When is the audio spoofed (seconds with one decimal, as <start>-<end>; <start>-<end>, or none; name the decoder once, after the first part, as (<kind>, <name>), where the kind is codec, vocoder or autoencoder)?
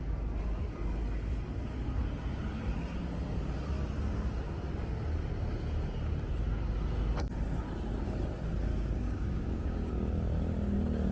8.7-9.9 (codec, DAC)